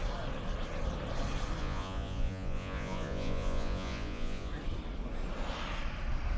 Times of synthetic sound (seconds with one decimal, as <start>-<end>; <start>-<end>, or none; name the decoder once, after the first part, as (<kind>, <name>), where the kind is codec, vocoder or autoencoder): 1.6-4.5 (vocoder, Vocos)